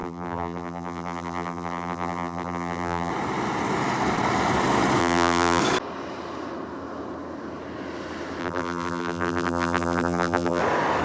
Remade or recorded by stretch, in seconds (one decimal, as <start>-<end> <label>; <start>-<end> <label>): 0.0-3.1 remade; 3.1-5.0 recorded; 5.0-5.6 remade; 5.6-8.4 recorded; 8.4-10.6 remade; 10.6-11.0 recorded